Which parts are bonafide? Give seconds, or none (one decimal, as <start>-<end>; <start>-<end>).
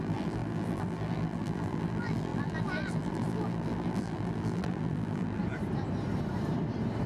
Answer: 5.4-7.1